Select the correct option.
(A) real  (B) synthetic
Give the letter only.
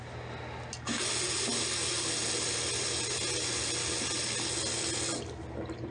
A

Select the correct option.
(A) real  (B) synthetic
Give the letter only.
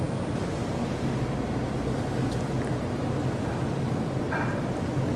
A